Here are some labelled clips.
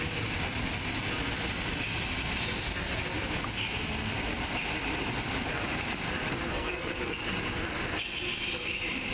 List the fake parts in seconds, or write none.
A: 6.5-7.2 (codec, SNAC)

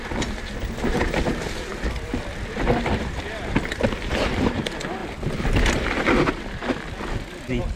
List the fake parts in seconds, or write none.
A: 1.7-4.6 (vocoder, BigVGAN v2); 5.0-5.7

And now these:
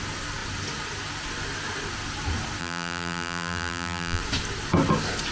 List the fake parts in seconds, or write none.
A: 2.6-4.2 (vocoder, BigVGAN v2)